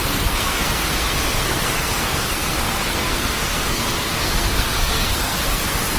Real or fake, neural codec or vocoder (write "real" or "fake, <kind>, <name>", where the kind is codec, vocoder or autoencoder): fake, codec, SNAC